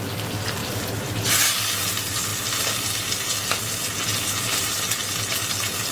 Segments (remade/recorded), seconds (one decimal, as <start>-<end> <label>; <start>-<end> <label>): 0.0-0.6 recorded; 0.6-1.5 remade; 1.5-5.9 recorded